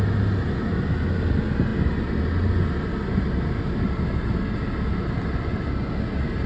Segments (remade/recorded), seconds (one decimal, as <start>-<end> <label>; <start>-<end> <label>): 0.0-6.5 recorded